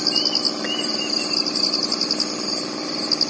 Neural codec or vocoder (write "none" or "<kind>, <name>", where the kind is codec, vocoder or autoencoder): none